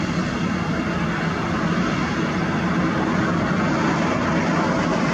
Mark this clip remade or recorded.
recorded